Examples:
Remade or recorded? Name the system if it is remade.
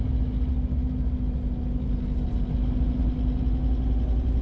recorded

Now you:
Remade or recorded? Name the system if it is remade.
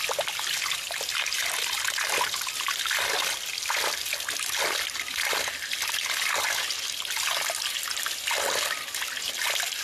recorded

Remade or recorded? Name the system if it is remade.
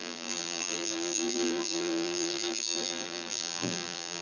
remade, vocoder, BigVGAN v2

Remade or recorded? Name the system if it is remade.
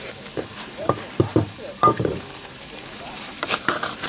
remade, vocoder, BigVGAN v2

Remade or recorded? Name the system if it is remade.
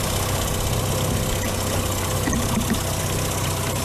recorded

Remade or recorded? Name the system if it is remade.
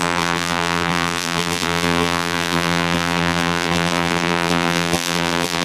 remade, vocoder, BigVGAN v2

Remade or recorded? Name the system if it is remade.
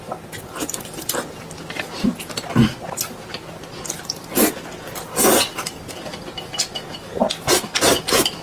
recorded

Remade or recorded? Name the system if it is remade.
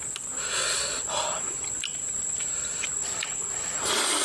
remade, vocoder, BigVGAN v2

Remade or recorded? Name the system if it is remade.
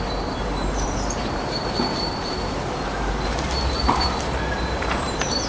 remade, vocoder, BigVGAN v2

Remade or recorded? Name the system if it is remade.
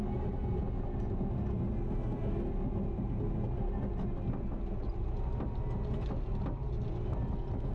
recorded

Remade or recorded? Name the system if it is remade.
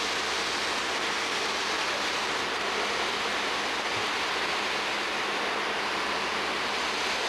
recorded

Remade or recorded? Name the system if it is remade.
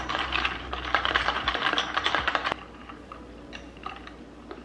remade, vocoder, BigVGAN v2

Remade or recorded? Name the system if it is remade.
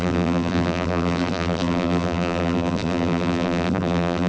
remade, vocoder, BigVGAN v2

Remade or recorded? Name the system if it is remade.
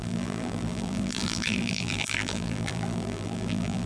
remade, vocoder, BigVGAN v2